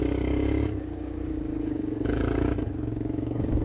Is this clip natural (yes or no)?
no